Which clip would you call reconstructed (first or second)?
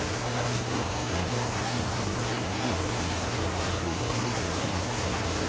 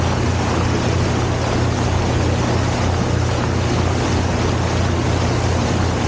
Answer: first